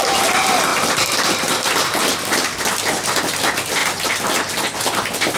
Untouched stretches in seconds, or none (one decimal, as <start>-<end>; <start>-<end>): 0.0-5.4